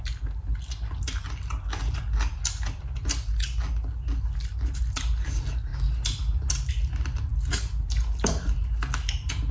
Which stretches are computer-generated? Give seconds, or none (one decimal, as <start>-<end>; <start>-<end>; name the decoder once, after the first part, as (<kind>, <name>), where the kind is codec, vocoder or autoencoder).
none